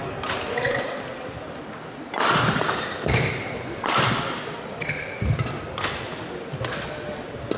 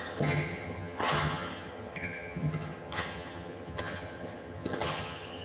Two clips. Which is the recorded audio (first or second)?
first